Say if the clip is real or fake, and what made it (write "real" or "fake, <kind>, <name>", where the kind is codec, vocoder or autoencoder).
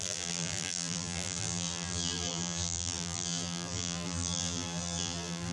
fake, vocoder, BigVGAN v2